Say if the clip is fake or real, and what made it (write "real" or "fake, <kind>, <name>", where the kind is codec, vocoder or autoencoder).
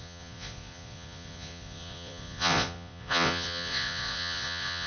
fake, vocoder, Vocos